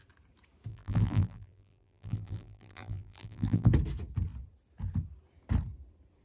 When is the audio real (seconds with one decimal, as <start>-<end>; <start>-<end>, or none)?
0.0-0.7; 3.7-6.2